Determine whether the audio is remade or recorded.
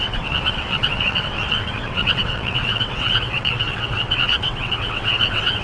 remade